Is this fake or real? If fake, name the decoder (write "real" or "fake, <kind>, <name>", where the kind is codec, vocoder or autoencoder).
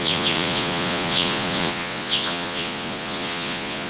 fake, vocoder, Vocos